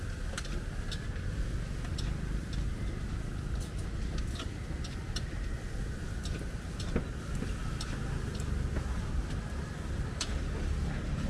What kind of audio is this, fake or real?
real